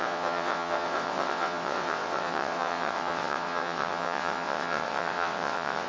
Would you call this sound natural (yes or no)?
no